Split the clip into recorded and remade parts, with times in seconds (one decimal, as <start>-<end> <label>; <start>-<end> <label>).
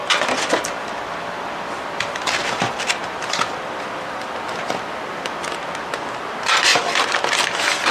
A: 0.0-3.9 remade; 3.9-6.7 recorded; 6.7-7.9 remade